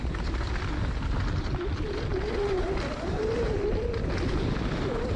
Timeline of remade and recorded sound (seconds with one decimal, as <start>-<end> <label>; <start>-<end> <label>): 0.0-5.2 recorded